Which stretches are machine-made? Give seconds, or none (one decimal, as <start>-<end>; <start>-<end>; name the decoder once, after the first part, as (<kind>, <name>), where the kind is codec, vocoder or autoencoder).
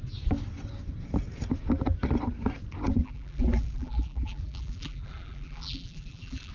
3.0-6.5 (vocoder, BigVGAN v2)